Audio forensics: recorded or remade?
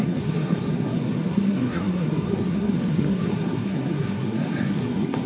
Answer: remade